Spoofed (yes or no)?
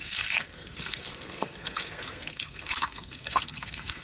yes